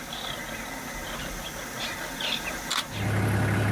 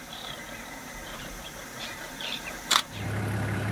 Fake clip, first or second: second